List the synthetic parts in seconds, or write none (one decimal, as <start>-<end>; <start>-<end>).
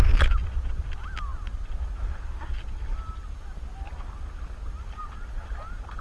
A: none